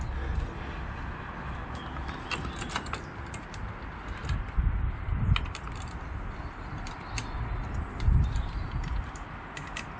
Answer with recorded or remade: recorded